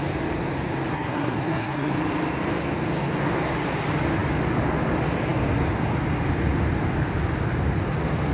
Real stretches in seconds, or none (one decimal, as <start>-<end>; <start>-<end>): 0.0-0.9; 1.9-8.3